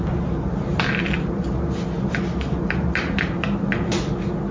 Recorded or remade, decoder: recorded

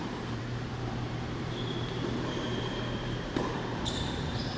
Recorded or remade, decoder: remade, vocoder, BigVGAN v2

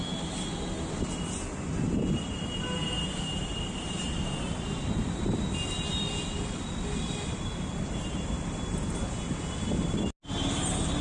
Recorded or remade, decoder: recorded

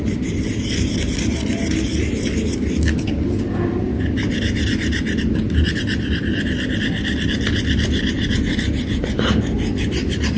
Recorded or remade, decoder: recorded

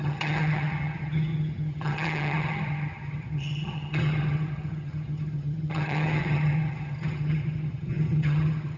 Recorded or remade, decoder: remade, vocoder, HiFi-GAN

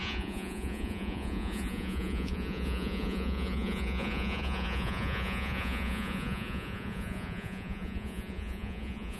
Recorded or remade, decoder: remade, vocoder, Vocos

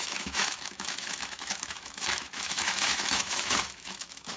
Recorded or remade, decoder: remade, autoencoder, DAC-VAE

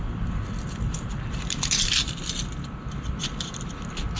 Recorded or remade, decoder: recorded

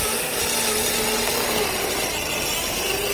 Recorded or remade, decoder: recorded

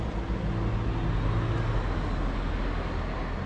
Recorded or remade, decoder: recorded